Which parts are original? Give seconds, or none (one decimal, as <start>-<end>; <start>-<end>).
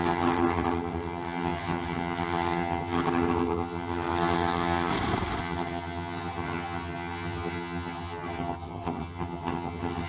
4.9-5.4